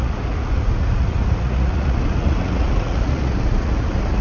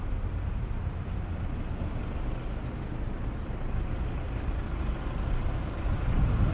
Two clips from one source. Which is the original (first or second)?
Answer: second